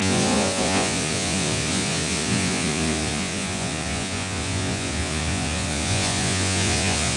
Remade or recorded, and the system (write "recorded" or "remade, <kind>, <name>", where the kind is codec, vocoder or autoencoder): remade, vocoder, Vocos